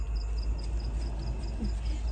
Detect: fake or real real